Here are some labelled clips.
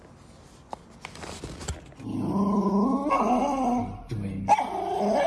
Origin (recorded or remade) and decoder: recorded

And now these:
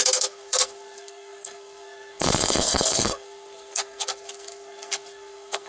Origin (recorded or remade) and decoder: remade, codec, SNAC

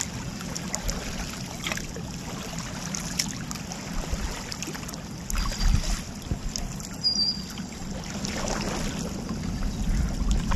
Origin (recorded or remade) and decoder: recorded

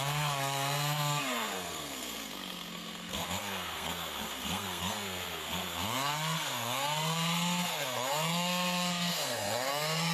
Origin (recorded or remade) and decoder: remade, codec, SNAC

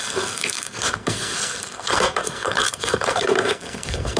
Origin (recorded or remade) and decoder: remade, codec, SNAC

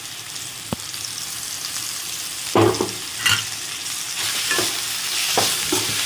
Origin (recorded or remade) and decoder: recorded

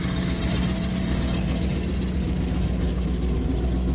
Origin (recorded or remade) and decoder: recorded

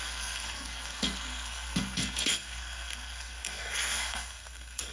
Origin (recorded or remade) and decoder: remade, codec, SNAC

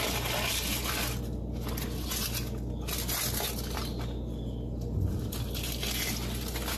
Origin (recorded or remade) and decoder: recorded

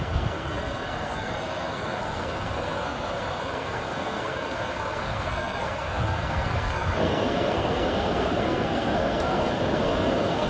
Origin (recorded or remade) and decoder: remade, codec, SNAC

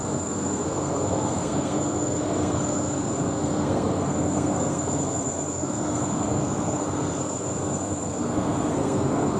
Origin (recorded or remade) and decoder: remade, codec, SNAC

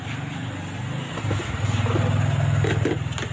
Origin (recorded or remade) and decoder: recorded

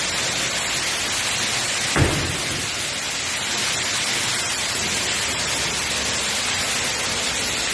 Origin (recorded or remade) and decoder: recorded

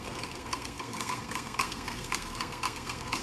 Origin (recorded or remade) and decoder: remade, codec, SNAC